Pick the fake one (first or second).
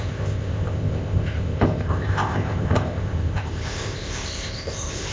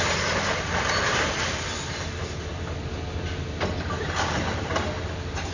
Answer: first